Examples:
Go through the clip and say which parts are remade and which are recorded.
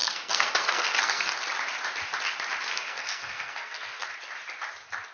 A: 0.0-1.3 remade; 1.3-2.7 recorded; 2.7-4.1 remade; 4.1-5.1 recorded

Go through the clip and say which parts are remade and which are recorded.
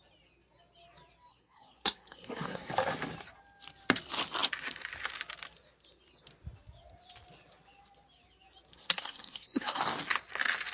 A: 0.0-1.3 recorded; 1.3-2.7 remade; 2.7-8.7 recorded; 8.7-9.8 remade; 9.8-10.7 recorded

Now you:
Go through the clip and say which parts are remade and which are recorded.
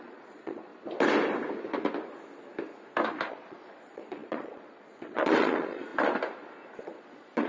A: 0.0-0.7 remade; 0.7-3.3 recorded; 3.3-5.9 remade; 5.9-6.8 recorded; 6.8-7.5 remade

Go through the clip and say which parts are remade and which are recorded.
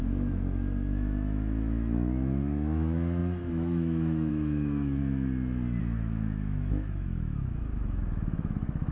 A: 0.0-5.0 remade; 5.0-5.8 recorded; 5.8-8.9 remade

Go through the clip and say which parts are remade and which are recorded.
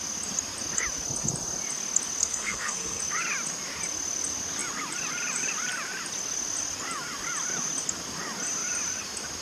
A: 0.0-2.2 recorded; 2.2-3.0 remade; 3.0-9.4 recorded